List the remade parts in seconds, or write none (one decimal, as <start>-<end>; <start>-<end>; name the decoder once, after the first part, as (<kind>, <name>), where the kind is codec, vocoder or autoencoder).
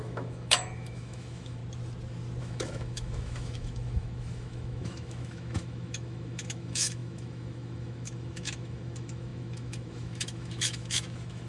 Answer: 0.0-1.6 (autoencoder, DAC-VAE); 2.4-11.5